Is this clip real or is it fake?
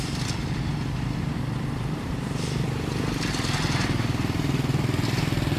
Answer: fake